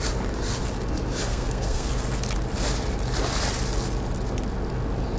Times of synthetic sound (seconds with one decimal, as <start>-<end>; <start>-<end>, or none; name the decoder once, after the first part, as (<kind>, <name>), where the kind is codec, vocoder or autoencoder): 1.3-1.9 (codec, SNAC)